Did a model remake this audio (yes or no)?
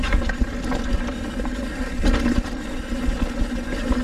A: no